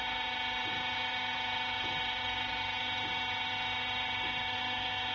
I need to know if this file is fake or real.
real